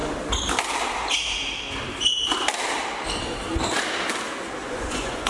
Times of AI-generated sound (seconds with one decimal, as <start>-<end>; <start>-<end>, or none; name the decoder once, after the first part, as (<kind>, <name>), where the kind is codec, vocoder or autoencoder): 4.6-5.3 (vocoder, Vocos)